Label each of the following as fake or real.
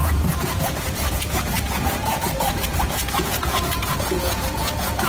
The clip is fake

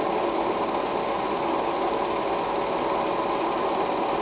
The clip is real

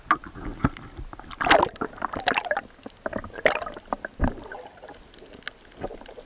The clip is real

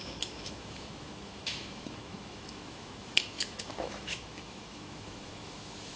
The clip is fake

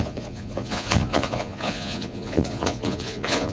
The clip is fake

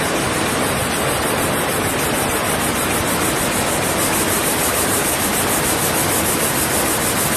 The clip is real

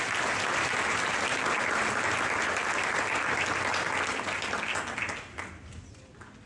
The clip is real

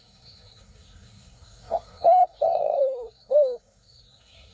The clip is fake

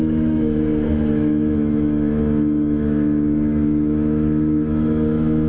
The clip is fake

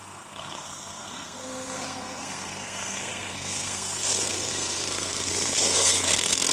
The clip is fake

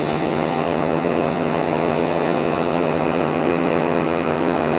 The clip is fake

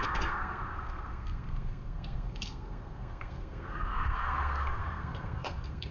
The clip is fake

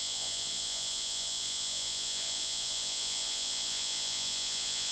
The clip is fake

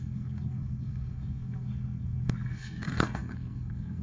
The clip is fake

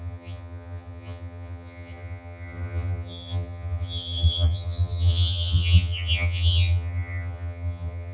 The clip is fake